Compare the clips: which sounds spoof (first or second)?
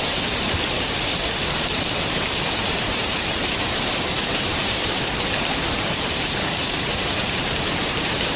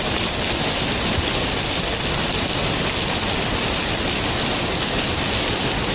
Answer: first